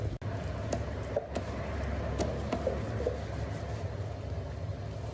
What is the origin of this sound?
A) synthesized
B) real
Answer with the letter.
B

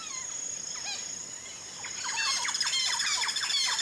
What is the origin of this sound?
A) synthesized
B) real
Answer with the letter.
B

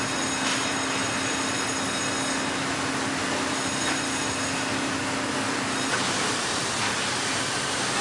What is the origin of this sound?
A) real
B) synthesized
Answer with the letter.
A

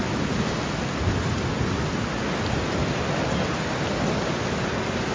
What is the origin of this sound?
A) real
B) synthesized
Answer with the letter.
A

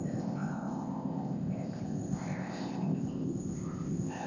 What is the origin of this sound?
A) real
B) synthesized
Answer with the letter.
B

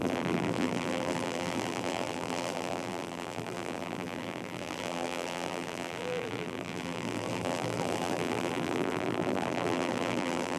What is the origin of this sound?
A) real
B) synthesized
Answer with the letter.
B